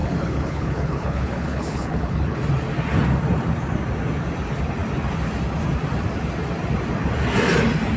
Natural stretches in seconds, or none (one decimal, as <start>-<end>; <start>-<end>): 2.4-8.0